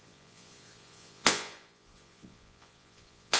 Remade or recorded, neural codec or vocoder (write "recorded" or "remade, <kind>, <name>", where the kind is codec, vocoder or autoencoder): remade, vocoder, Vocos